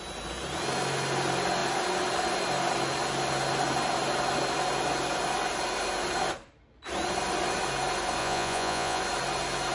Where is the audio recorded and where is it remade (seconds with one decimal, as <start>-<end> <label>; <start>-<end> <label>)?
0.0-8.2 recorded; 8.2-9.0 remade; 9.0-9.7 recorded